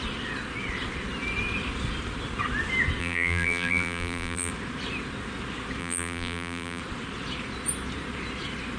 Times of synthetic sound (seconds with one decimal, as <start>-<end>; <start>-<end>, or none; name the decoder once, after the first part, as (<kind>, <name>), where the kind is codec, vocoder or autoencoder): 3.0-4.5 (vocoder, BigVGAN v2); 5.8-6.8